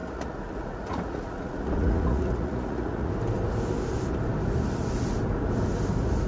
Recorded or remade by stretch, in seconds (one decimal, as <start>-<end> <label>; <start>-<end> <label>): 0.0-3.1 remade; 3.1-6.3 recorded